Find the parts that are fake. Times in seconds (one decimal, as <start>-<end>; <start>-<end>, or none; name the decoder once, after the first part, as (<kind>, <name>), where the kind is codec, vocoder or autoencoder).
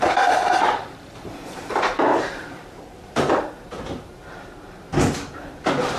0.0-4.9 (vocoder, BigVGAN v2); 5.4-6.0